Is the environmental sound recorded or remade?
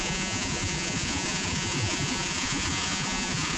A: remade